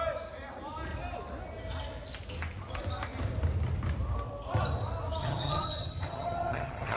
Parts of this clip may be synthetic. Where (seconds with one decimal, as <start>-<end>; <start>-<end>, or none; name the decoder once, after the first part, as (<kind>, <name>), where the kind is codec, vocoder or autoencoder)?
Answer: 5.2-7.0 (vocoder, HiFi-GAN)